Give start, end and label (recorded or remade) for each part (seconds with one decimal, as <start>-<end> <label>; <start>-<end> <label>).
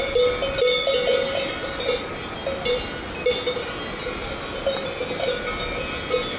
0.0-6.4 recorded